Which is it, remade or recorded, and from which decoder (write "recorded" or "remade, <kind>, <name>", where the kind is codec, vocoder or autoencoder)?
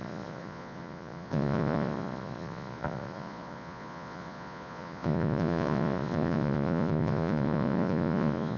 remade, vocoder, Vocos